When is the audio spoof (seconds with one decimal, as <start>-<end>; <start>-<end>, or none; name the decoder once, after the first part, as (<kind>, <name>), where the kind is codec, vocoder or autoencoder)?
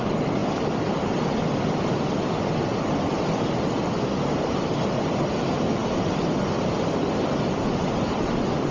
none